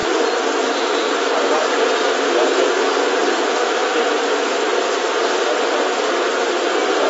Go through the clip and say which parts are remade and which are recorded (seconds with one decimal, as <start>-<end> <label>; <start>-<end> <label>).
0.0-0.6 remade; 0.6-3.2 recorded; 3.2-4.1 remade; 4.1-7.1 recorded